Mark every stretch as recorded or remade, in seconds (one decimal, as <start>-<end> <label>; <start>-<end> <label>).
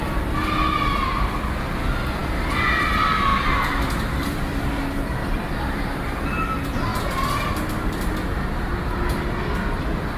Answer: 0.0-3.3 recorded; 3.3-4.8 remade; 4.8-10.2 recorded